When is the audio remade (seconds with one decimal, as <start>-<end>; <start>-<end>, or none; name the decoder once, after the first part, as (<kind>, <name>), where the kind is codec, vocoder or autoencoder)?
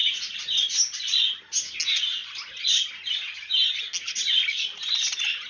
none